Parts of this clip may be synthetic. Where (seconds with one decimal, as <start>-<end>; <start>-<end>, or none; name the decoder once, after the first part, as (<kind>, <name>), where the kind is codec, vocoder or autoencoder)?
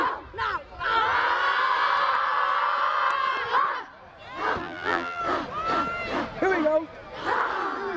4.6-5.2 (vocoder, BigVGAN v2)